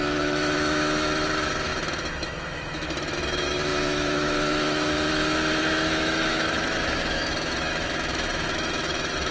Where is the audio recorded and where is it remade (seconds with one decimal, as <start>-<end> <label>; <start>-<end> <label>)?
0.0-9.3 remade